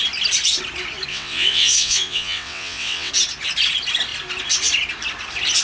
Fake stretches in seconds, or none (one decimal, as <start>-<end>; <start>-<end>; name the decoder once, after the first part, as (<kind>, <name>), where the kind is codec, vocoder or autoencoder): 1.1-3.1 (vocoder, WaveNeXt)